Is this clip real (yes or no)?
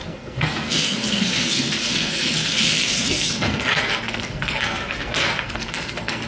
no